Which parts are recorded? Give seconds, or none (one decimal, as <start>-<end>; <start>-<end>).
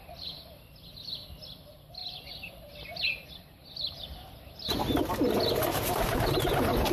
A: 0.0-6.9